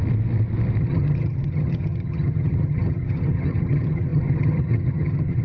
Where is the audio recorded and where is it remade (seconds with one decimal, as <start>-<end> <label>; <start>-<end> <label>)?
0.0-0.8 recorded; 0.8-5.4 remade